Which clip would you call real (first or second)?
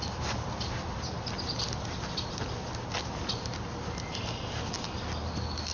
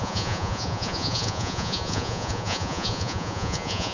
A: first